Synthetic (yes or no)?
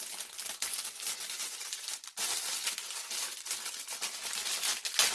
no